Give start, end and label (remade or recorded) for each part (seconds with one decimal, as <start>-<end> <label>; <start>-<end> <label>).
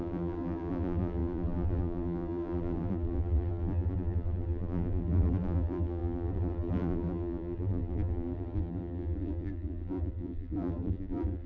0.0-11.5 remade